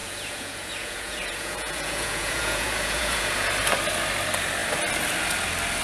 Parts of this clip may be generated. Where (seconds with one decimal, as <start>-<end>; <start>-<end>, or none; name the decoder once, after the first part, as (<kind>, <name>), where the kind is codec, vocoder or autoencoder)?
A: 0.0-3.5 (vocoder, Vocos)

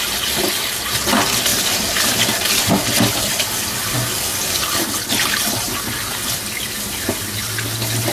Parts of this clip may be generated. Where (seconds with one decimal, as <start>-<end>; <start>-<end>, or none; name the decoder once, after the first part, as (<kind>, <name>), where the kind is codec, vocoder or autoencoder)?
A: none

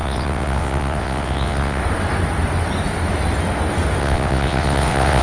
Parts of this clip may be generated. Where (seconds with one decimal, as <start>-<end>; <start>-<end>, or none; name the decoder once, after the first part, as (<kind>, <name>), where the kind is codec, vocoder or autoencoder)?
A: 0.0-1.8 (vocoder, WaveNeXt); 4.0-5.2

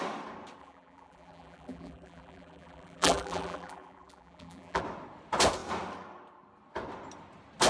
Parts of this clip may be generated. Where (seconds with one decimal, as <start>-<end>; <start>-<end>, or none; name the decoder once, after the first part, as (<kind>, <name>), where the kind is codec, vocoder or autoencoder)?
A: 0.6-4.8 (vocoder, BigVGAN v2)

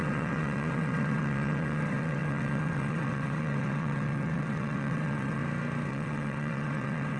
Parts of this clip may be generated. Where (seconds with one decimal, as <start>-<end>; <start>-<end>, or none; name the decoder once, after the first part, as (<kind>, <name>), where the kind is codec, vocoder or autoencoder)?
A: 0.0-5.4 (vocoder, WaveNeXt); 5.9-7.2

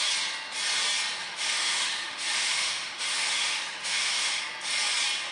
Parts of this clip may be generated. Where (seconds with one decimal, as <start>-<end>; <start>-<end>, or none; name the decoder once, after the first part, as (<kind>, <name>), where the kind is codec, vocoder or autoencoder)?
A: 1.2-4.4 (autoencoder, DAC-VAE)

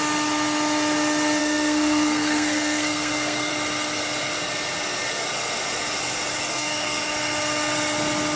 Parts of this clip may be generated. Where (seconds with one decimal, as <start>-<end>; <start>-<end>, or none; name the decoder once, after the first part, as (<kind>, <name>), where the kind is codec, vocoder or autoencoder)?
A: 1.4-3.5 (codec, SNAC); 6.5-7.0

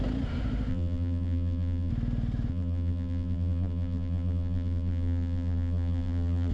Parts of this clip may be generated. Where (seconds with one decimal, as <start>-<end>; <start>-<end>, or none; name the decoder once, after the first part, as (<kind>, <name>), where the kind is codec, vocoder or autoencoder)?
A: 0.7-1.9 (vocoder, BigVGAN v2); 2.5-6.5